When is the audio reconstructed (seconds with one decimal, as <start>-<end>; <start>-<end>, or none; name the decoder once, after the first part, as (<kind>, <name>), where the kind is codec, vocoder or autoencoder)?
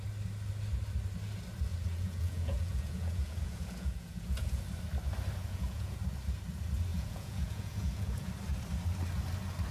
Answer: 1.7-4.6 (vocoder, Vocos); 5.4-6.0; 6.9-8.3